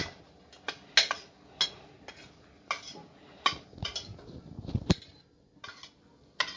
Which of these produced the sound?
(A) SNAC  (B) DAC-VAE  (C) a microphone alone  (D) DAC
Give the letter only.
C